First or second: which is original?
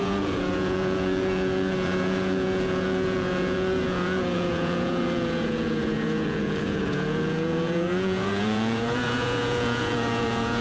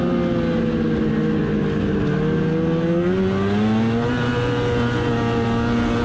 second